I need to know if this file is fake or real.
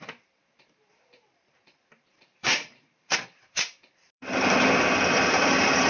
fake